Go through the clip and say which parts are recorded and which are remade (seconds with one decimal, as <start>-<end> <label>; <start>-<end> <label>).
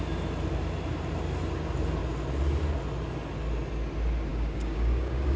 0.0-4.3 recorded; 4.3-5.4 remade